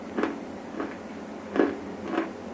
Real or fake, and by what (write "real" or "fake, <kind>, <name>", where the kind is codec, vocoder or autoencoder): real